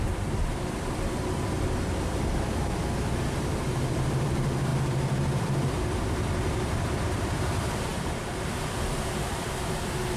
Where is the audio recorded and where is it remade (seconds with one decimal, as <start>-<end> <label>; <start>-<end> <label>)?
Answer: 0.0-10.2 remade